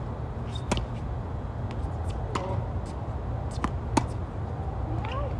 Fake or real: real